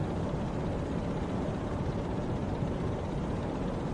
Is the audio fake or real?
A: fake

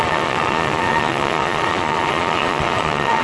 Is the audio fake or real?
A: fake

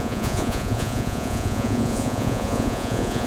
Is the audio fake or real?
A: fake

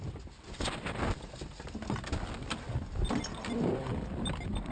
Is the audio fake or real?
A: real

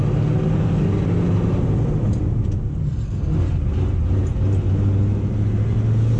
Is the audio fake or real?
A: real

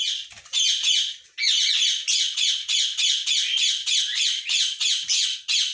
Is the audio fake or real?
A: real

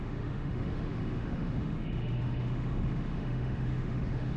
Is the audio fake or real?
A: fake